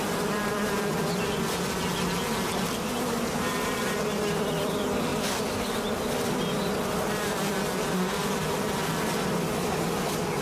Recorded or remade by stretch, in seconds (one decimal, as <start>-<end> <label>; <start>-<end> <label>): 0.0-0.4 recorded; 0.4-0.9 remade; 0.9-5.1 recorded; 5.1-6.7 remade; 6.7-8.8 recorded; 8.8-9.9 remade; 9.9-10.4 recorded